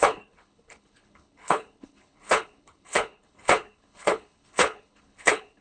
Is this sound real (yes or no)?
no